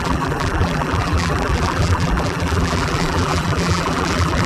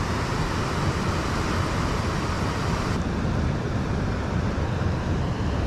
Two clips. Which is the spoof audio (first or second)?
first